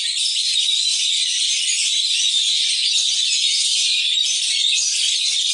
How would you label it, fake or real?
real